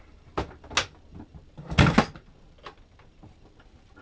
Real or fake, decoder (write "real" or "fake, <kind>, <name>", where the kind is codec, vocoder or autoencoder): real